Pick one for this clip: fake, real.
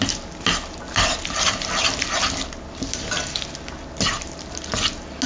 real